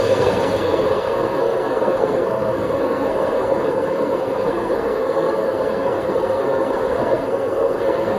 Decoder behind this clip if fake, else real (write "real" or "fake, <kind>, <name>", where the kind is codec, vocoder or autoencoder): fake, codec, SNAC